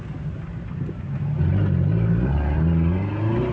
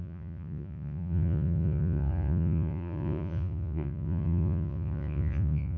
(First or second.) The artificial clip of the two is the second